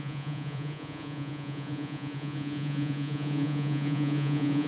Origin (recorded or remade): remade